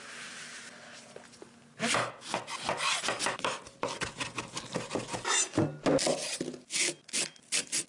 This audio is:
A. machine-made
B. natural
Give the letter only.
B